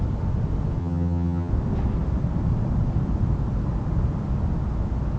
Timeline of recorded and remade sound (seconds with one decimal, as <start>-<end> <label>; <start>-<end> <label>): 0.0-0.8 recorded; 0.8-1.5 remade; 1.5-5.2 recorded